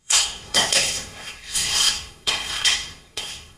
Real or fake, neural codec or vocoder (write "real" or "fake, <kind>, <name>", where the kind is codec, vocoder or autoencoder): fake, codec, SNAC